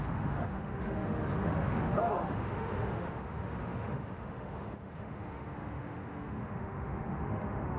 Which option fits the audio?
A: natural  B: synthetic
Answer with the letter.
B